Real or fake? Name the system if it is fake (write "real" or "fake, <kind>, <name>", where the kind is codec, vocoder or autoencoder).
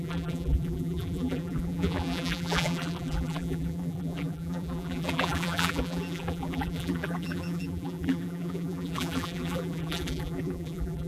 fake, vocoder, BigVGAN v2